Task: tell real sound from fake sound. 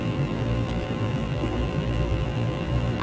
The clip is fake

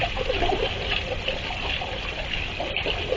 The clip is real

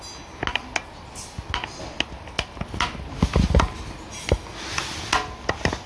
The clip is real